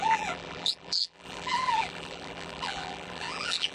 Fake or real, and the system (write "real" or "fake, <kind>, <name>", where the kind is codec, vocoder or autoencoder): fake, vocoder, BigVGAN v2